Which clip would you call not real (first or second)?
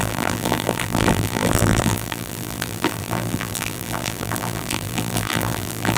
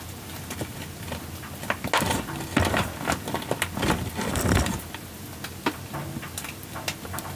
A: first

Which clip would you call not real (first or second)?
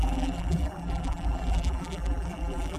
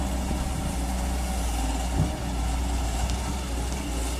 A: first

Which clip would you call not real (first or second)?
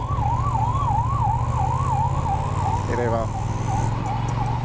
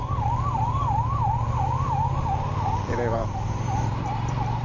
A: second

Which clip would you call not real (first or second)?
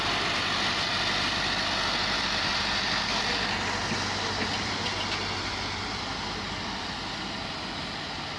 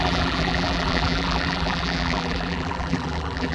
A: second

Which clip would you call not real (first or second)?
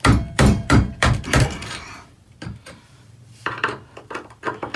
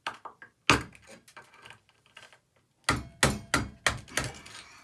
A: first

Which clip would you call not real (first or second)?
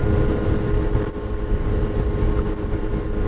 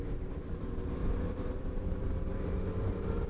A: second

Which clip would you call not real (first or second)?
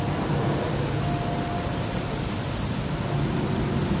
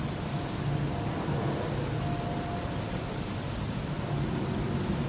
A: second